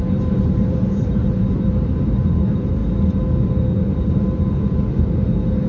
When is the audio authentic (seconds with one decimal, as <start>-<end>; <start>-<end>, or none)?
2.8-5.7